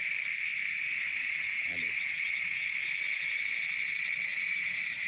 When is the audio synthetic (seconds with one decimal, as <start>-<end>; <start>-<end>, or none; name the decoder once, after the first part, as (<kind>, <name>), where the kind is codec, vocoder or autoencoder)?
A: 0.5-2.7 (vocoder, Vocos); 4.3-5.1